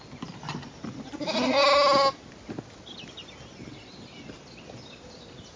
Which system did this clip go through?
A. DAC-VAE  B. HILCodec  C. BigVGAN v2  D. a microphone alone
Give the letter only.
D